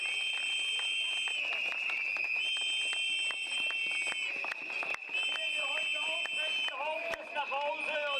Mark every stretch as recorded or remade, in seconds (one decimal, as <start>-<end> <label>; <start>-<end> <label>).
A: 0.0-8.2 recorded

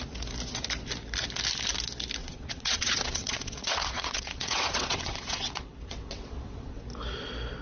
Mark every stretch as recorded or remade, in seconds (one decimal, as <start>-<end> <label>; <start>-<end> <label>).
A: 0.0-2.2 recorded; 2.2-6.8 remade; 6.8-7.6 recorded

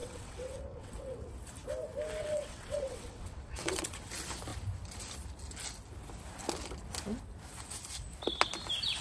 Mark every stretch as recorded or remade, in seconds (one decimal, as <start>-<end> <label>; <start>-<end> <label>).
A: 0.0-1.3 remade; 1.3-2.2 recorded; 2.2-4.0 remade; 4.0-9.0 recorded

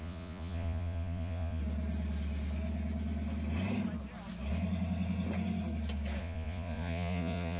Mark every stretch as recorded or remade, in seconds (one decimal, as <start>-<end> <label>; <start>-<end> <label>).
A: 0.0-1.6 remade; 1.6-6.2 recorded; 6.2-7.6 remade